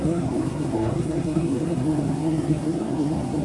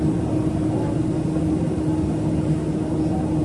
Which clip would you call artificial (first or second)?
first